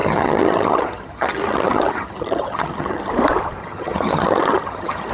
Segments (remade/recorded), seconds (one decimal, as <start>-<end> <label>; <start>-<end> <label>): 0.0-3.1 remade; 3.1-3.6 recorded; 3.6-5.1 remade